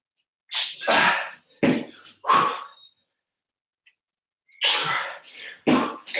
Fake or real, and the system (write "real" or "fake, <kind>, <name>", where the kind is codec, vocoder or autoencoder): real